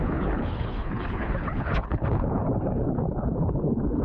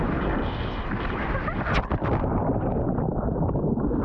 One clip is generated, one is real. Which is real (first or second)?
second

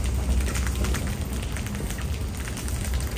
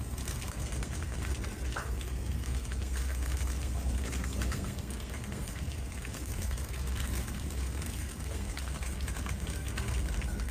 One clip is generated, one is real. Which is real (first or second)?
first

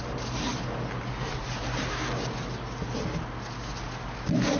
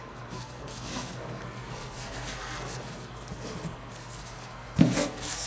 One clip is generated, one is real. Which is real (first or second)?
first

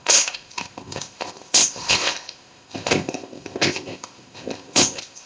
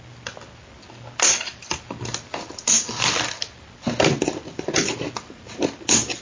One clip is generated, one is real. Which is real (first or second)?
second